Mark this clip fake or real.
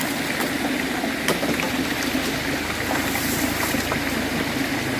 real